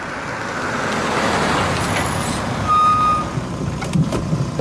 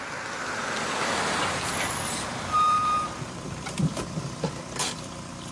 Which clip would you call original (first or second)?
first